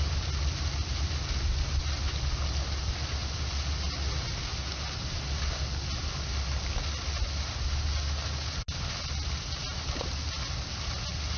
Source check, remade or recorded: recorded